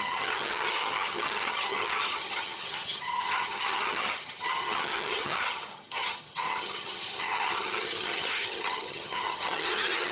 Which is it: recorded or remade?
remade